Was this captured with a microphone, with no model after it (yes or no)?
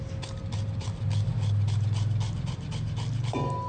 yes